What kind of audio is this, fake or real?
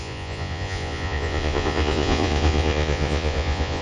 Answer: fake